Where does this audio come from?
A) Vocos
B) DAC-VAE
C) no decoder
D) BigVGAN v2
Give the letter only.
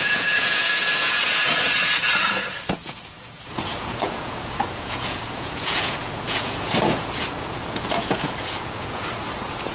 A